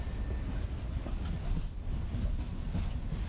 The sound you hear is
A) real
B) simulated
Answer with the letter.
A